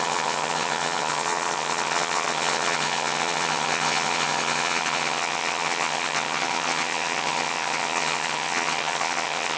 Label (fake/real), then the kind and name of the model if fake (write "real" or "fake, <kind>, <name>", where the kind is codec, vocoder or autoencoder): fake, vocoder, HiFi-GAN